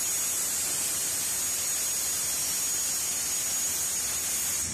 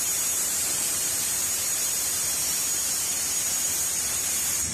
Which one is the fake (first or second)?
second